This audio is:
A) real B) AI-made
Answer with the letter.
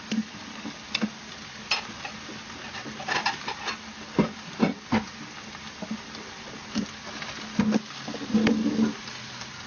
A